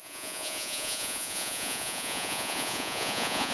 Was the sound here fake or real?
fake